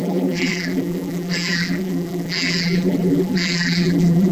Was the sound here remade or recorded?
remade